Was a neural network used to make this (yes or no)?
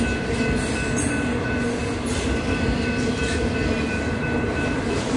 no